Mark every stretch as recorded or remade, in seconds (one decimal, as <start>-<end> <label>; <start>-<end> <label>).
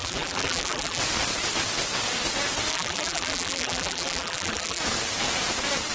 0.0-1.0 remade; 1.0-2.7 recorded; 2.7-4.8 remade; 4.8-5.9 recorded